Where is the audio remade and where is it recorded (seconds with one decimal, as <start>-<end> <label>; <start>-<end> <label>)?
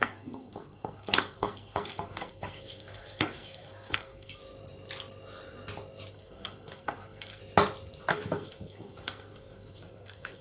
0.0-4.4 remade; 4.4-6.1 recorded; 6.1-7.4 remade; 7.4-8.1 recorded; 8.1-10.4 remade